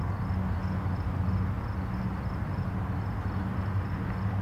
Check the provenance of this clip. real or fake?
real